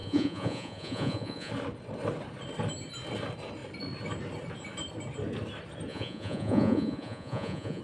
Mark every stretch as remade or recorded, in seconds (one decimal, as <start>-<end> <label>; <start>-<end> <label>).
0.0-1.5 remade; 1.5-5.9 recorded; 5.9-7.8 remade